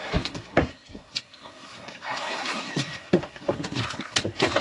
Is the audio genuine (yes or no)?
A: no